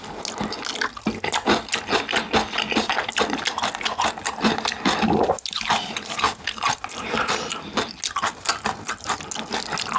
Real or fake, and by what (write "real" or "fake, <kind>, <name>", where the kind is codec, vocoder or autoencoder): real